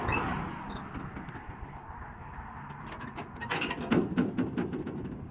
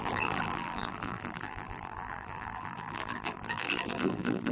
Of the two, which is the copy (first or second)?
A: second